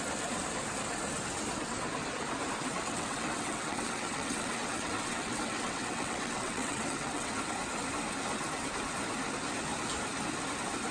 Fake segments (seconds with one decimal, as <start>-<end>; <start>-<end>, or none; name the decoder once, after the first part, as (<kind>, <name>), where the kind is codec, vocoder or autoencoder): 2.6-7.3 (vocoder, WaveNeXt)